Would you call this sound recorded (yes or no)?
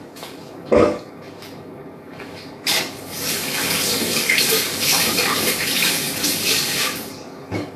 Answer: no